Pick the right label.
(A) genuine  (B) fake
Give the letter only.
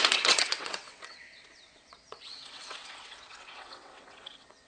B